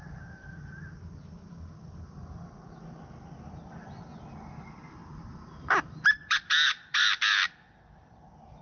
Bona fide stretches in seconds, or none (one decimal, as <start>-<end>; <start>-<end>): 0.0-8.6